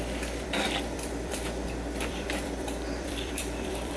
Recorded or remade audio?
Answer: remade